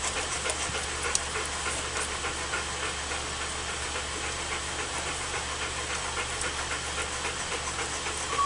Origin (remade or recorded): recorded